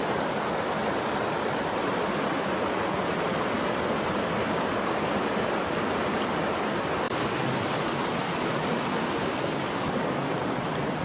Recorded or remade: recorded